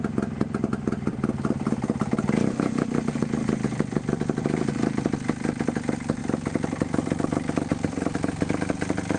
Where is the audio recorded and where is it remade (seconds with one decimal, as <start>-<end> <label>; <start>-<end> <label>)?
0.0-9.2 recorded